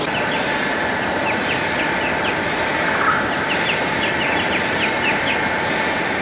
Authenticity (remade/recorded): recorded